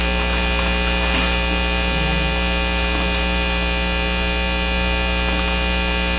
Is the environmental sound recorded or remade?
recorded